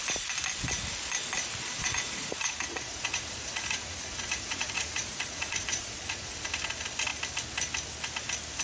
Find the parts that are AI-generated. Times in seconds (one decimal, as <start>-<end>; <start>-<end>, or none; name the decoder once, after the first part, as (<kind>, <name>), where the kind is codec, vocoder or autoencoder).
1.8-6.4 (vocoder, Vocos)